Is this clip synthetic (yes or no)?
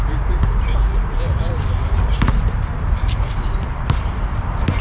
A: yes